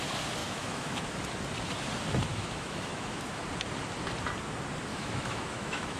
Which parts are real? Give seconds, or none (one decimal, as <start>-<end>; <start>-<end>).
0.0-0.4; 1.0-2.3; 3.4-4.9